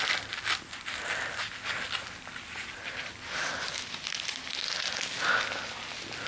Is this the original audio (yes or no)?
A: yes